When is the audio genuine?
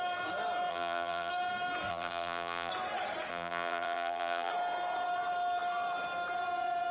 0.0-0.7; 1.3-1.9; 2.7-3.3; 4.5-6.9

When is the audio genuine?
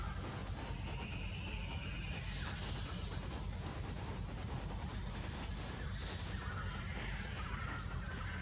0.0-8.4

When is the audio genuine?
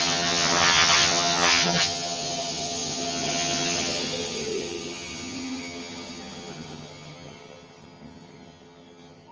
none